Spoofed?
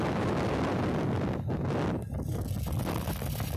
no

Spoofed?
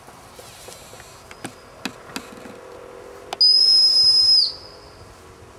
no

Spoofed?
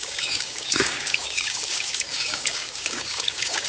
yes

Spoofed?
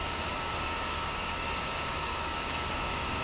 yes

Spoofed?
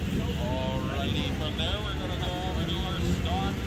no